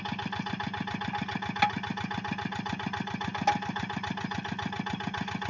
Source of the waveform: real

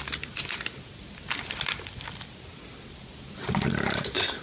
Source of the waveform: real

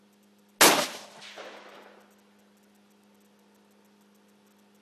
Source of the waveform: real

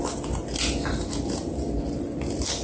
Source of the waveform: real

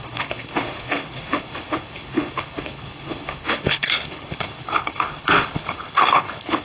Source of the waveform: fake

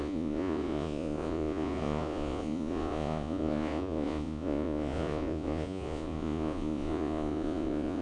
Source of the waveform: fake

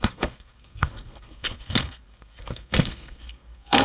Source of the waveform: fake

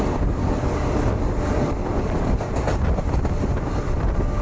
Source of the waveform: real